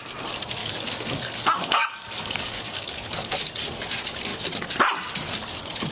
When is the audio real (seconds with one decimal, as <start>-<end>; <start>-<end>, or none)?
0.0-0.6; 3.3-5.9